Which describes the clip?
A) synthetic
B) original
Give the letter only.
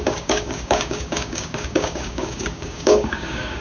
A